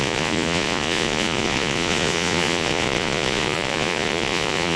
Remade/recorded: remade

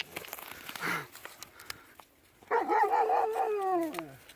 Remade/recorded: recorded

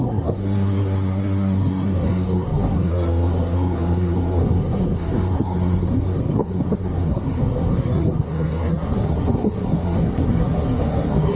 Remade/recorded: remade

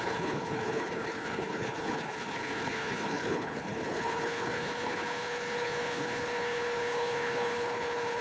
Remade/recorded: remade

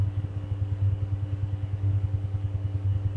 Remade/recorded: remade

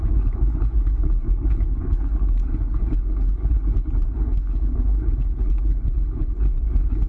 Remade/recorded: remade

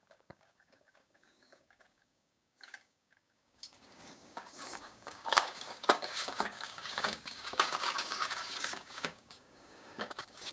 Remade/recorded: remade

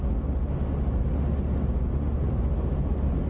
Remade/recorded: recorded